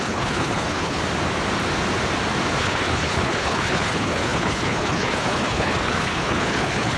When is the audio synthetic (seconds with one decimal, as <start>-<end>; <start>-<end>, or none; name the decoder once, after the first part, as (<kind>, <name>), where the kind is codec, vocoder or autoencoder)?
0.0-1.0 (codec, HILCodec); 2.6-7.0